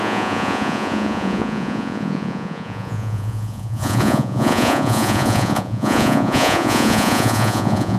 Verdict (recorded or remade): remade